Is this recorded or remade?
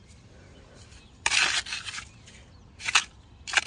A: recorded